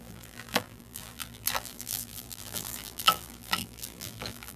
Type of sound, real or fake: fake